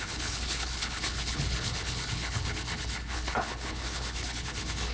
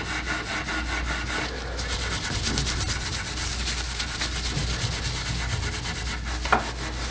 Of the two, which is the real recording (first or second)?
second